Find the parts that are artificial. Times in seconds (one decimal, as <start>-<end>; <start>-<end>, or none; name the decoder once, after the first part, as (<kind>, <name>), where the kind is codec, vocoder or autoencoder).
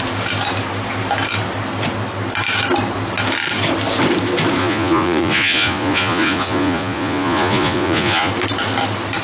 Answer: 4.6-8.3 (vocoder, Vocos)